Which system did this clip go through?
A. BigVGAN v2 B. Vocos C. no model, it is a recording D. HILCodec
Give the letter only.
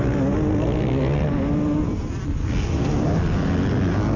C